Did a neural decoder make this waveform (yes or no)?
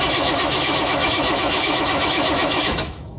yes